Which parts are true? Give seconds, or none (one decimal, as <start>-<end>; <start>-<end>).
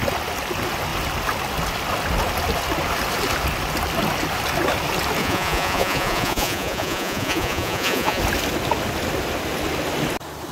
0.0-5.2; 8.2-10.5